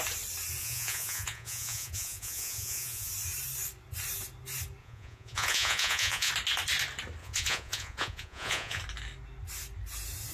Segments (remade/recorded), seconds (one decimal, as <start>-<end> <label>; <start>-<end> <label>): 0.0-0.6 recorded; 0.6-3.1 remade; 3.1-4.8 recorded; 4.8-6.3 remade; 6.3-7.2 recorded; 7.2-8.8 remade; 8.8-10.3 recorded